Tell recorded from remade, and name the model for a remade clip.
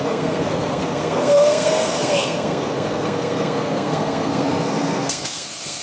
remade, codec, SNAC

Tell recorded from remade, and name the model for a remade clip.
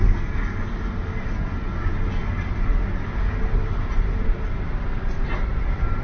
recorded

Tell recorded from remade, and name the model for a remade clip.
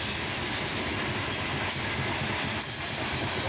recorded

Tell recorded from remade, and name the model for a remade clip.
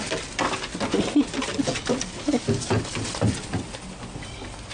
recorded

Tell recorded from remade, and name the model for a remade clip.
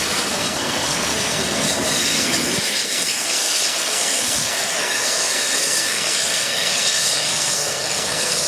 remade, codec, SNAC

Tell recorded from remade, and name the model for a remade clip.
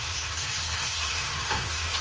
remade, codec, SNAC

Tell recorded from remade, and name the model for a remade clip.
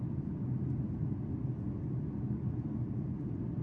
recorded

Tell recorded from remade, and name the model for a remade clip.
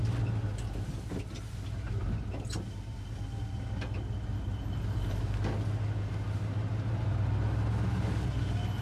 recorded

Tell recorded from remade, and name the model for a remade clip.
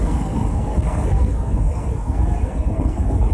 remade, codec, SNAC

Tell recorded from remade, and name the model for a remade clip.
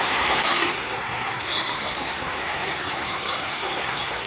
remade, codec, SNAC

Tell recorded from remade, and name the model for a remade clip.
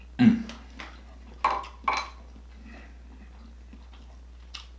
recorded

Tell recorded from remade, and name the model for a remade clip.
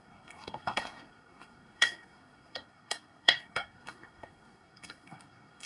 remade, codec, SNAC